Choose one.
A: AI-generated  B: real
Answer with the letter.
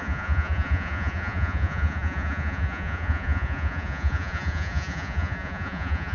A